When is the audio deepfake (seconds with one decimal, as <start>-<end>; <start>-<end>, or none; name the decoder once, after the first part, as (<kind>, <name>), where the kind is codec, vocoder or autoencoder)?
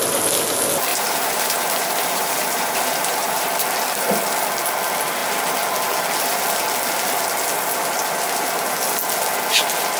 0.9-3.5 (vocoder, BigVGAN v2)